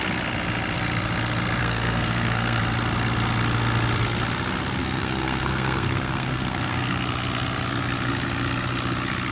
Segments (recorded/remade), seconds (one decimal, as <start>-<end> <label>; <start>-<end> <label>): 0.0-1.6 recorded; 1.6-2.6 remade; 2.6-4.8 recorded; 4.8-6.9 remade; 6.9-9.3 recorded